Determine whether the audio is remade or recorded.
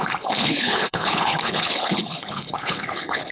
remade